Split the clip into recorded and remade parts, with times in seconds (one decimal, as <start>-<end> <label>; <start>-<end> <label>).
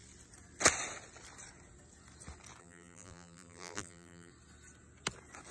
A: 0.0-2.6 recorded; 2.6-4.3 remade; 4.3-5.5 recorded